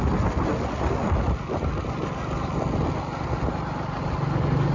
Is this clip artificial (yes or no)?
no